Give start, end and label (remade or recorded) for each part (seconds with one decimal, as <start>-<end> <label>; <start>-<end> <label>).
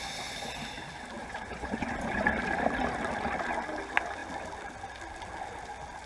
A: 0.0-1.2 recorded; 1.2-2.2 remade; 2.2-6.1 recorded